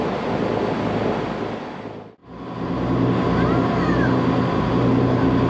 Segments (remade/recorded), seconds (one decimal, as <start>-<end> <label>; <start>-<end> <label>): 0.0-5.5 recorded